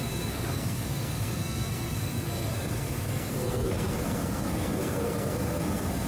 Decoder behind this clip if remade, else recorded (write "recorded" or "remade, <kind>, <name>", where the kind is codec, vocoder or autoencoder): remade, codec, SNAC